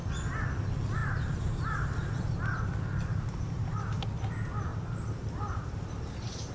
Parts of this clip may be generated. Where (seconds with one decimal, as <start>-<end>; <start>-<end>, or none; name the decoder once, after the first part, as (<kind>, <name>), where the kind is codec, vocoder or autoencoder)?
1.0-3.7 (vocoder, BigVGAN v2); 4.7-6.5